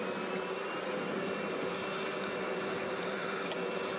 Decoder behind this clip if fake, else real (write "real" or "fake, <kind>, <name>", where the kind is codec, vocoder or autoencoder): real